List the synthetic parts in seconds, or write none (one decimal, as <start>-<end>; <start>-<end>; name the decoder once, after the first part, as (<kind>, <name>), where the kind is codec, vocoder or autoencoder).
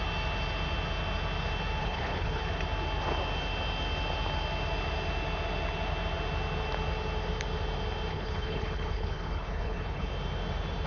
1.8-2.4 (codec, HILCodec); 8.1-10.1